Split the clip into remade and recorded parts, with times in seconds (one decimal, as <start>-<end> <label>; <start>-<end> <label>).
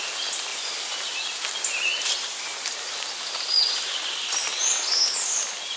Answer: 0.0-0.5 recorded; 0.5-1.0 remade; 1.0-5.8 recorded